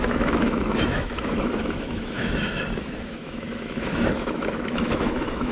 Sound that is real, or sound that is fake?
fake